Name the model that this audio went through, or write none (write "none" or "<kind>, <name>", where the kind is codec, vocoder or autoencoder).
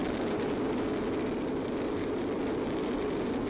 none